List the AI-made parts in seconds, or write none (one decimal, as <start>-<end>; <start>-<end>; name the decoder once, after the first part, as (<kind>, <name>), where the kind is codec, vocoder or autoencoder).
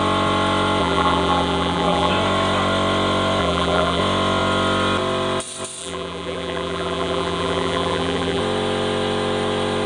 0.8-2.1 (vocoder, BigVGAN v2); 3.4-4.0; 5.8-8.4